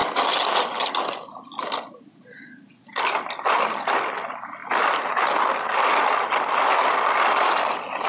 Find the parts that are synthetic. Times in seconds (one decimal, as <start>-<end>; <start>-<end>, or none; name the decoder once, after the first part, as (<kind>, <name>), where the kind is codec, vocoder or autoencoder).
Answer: none

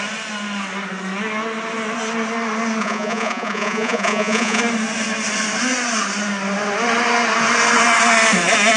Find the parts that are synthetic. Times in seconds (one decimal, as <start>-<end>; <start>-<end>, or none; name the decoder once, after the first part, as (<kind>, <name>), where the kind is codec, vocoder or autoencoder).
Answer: 2.8-4.6 (vocoder, Vocos)